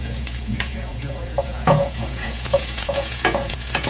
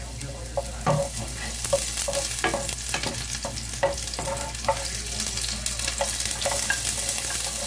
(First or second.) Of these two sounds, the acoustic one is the second